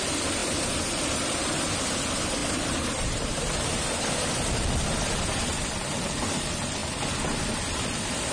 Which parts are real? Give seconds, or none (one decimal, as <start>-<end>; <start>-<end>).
0.0-8.3